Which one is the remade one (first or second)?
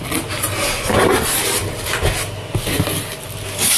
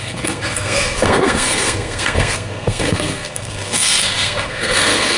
second